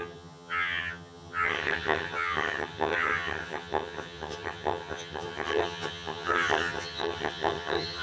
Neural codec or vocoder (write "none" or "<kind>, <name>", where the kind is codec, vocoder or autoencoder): vocoder, HiFi-GAN